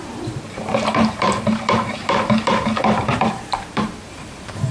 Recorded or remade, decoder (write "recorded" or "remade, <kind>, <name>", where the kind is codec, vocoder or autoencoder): remade, vocoder, BigVGAN v2